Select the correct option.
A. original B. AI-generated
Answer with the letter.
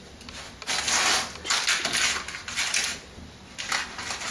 A